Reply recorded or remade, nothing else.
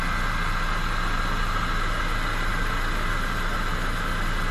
recorded